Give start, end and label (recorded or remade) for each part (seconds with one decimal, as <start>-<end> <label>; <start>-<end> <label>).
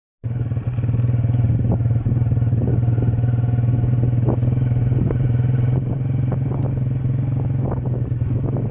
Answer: 0.0-4.8 recorded; 4.8-6.6 remade; 6.6-8.7 recorded